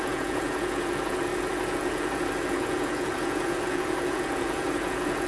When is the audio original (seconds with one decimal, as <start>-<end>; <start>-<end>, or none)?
none